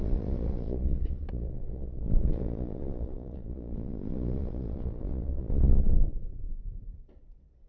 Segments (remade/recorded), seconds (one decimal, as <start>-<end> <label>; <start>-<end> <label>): 0.0-7.7 remade